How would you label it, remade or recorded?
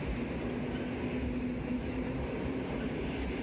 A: recorded